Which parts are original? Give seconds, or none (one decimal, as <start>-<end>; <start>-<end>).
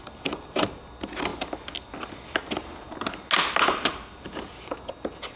0.0-5.4